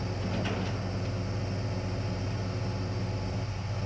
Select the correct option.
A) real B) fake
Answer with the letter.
A